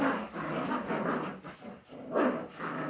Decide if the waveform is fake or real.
real